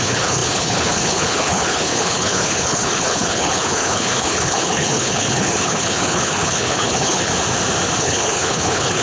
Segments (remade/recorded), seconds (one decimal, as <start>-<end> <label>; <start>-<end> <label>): 0.0-7.3 remade; 7.3-8.0 recorded; 8.0-9.0 remade